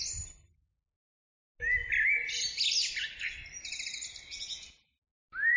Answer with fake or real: real